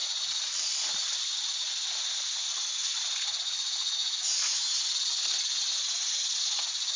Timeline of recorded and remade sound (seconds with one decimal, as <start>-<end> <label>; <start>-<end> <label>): 0.0-1.2 remade; 1.2-7.0 recorded